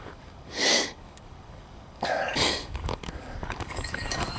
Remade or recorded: remade